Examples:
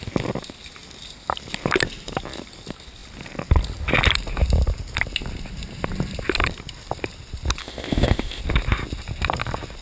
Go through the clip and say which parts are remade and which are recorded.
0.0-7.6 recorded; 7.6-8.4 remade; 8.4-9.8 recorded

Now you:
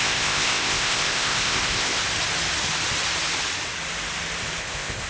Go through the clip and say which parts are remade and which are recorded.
0.0-2.0 remade; 2.0-4.6 recorded; 4.6-5.1 remade

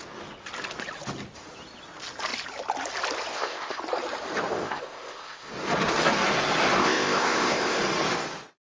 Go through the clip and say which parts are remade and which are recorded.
0.0-3.3 recorded; 3.3-3.8 remade; 3.8-4.5 recorded; 4.5-5.5 remade; 5.5-6.8 recorded; 6.8-7.8 remade; 7.8-8.6 recorded

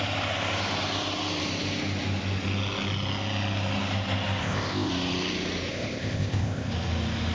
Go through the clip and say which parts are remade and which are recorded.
0.0-4.4 recorded; 4.4-4.9 remade; 4.9-5.7 recorded; 5.7-6.7 remade; 6.7-7.3 recorded

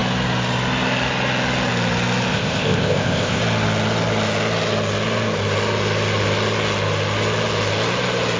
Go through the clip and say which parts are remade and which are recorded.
0.0-2.3 recorded; 2.3-3.4 remade; 3.4-8.4 recorded

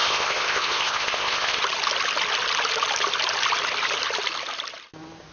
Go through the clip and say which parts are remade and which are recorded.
0.0-1.6 remade; 1.6-5.3 recorded